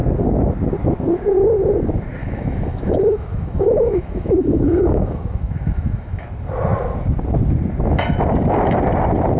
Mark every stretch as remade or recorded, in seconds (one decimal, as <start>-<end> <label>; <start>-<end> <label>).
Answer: 0.0-2.2 recorded; 2.2-6.2 remade; 6.2-9.4 recorded